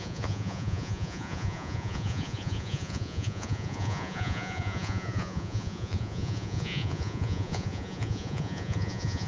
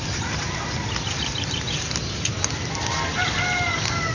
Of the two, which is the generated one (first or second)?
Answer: first